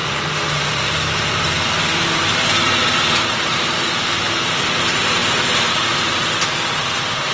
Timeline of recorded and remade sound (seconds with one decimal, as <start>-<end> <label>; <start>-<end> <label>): 0.0-7.3 remade